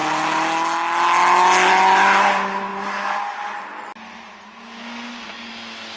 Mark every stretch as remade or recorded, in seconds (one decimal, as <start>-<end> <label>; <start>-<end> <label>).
0.0-6.0 recorded